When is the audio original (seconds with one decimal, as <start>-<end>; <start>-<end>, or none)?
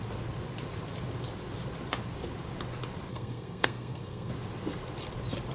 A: 0.0-3.1; 4.3-5.5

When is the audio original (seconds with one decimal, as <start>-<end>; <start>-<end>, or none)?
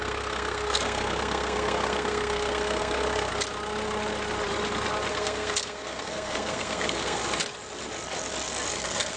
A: 3.3-5.1; 7.2-8.7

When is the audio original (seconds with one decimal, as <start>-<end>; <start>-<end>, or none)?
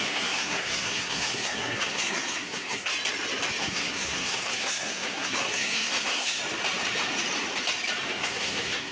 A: 2.9-3.6; 6.4-8.1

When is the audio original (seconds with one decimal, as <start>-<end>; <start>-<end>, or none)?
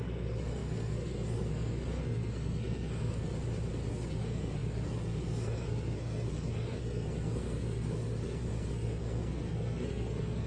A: 3.3-3.9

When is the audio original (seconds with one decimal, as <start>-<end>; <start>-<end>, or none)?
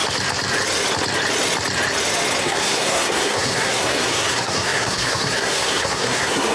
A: 0.0-2.4